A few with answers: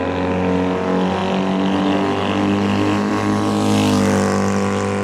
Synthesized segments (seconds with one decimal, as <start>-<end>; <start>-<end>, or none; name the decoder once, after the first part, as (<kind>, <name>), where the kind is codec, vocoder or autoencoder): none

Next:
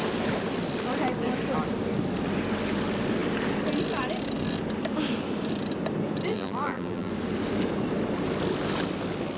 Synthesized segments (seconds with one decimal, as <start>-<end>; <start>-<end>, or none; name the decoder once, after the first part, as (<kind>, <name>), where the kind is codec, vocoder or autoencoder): 6.3-7.1 (vocoder, BigVGAN v2)

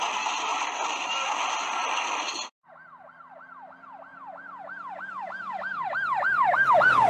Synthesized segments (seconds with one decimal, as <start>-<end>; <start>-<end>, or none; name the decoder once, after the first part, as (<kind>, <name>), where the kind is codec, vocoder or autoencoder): none